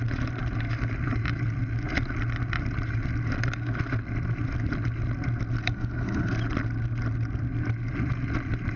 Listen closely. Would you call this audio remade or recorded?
recorded